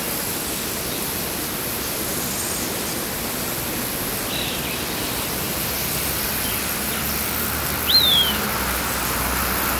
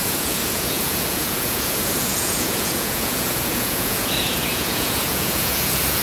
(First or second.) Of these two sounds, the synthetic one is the second